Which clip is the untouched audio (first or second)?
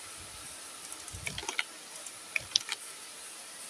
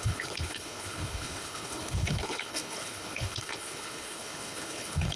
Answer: first